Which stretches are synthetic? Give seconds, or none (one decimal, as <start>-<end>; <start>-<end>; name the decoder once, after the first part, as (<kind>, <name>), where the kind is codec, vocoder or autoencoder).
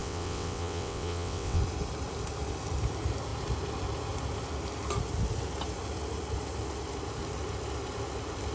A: 0.0-1.6 (vocoder, WaveNeXt)